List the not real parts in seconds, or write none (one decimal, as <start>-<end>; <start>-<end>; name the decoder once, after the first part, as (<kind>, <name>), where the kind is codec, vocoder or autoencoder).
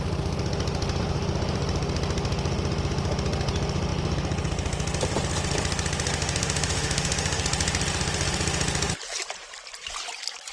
6.2-7.4 (autoencoder, DAC-VAE)